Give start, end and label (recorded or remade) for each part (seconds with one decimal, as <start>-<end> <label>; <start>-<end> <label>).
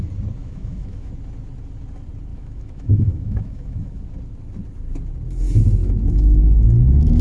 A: 0.0-0.4 recorded; 0.4-1.1 remade; 1.1-2.3 recorded; 2.3-4.1 remade; 4.1-5.8 recorded; 5.8-7.2 remade